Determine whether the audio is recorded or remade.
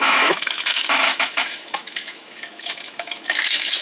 remade